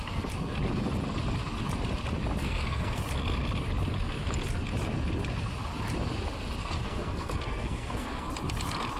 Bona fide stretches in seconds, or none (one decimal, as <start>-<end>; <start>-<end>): 0.0-2.4; 3.0-6.6; 8.3-9.0